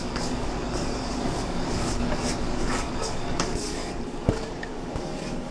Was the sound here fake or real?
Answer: fake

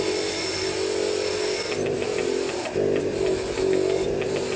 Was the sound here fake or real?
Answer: real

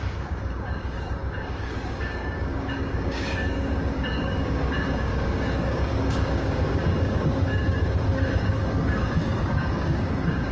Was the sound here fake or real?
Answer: fake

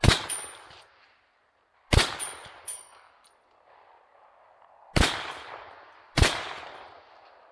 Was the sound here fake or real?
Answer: real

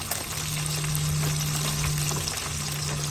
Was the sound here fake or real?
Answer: real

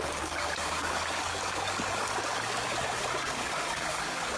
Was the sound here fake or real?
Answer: fake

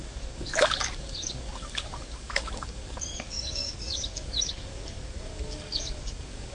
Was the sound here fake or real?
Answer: fake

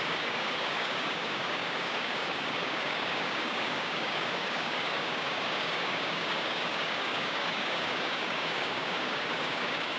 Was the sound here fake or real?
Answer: fake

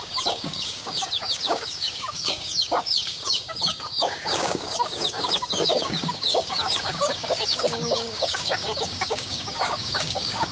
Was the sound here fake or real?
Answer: fake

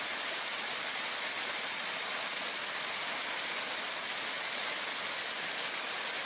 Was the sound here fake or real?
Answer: real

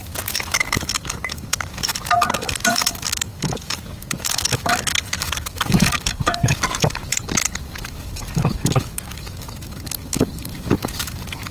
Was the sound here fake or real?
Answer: fake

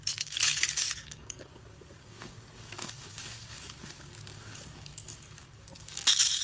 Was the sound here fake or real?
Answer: fake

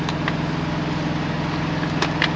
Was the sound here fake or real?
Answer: real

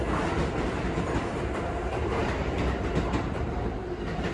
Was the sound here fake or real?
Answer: real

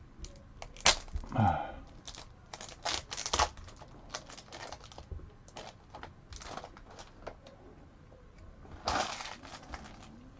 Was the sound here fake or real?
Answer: real